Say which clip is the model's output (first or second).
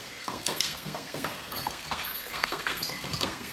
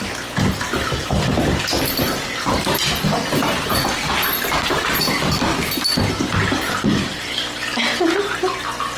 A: first